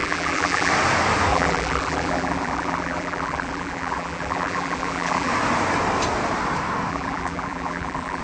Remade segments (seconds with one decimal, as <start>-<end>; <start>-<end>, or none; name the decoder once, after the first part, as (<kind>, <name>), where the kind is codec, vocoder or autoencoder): 0.0-0.7 (vocoder, BigVGAN v2); 1.3-5.3; 6.9-8.2

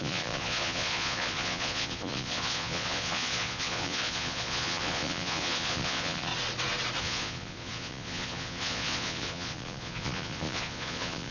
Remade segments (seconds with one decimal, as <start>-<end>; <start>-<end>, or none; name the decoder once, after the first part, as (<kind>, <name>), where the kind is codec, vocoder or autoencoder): 0.0-6.3 (vocoder, Vocos); 7.0-11.3

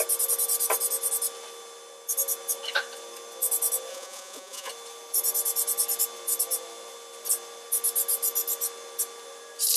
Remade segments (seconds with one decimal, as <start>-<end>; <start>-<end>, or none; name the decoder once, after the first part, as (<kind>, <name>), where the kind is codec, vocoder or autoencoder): 3.9-4.7 (vocoder, Vocos)

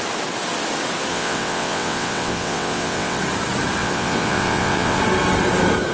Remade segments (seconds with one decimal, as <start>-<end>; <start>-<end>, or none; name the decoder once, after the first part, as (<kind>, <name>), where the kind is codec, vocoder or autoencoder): 1.1-3.2 (vocoder, WaveNeXt); 3.8-5.0

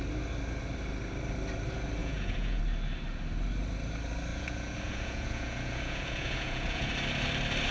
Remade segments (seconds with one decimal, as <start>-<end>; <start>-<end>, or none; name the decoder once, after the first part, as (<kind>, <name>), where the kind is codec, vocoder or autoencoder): 2.0-2.6 (vocoder, Vocos); 4.3-6.9

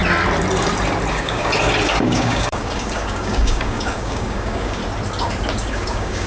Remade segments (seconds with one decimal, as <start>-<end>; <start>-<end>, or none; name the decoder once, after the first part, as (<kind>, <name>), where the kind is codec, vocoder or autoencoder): 1.1-1.5 (codec, DAC); 2.0-4.8; 5.7-6.3

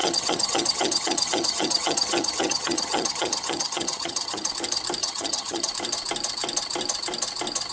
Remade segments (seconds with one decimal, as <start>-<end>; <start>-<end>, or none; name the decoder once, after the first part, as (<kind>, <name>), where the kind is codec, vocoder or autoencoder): 0.0-4.5 (vocoder, HiFi-GAN); 5.0-5.7